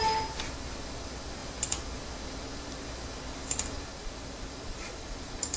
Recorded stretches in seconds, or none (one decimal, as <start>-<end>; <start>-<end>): 0.0-3.9